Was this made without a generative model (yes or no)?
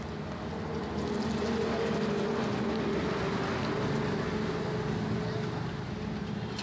yes